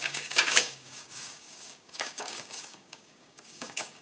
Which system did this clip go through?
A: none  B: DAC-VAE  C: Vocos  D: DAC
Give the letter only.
D